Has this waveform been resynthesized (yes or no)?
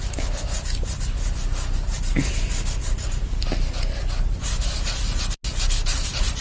no